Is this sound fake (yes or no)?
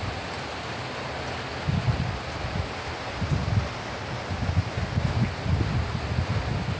no